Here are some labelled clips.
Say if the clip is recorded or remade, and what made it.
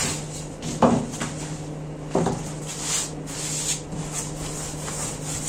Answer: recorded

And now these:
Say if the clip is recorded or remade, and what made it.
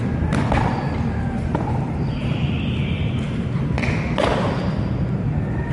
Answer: recorded